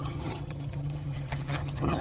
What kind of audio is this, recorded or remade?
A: remade